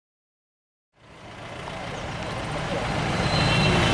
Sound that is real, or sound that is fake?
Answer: real